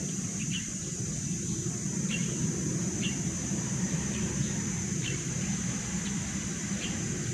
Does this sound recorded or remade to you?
remade